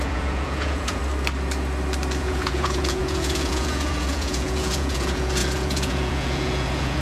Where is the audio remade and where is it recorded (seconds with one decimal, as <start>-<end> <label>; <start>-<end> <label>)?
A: 0.0-1.0 remade; 1.0-2.2 recorded; 2.2-7.0 remade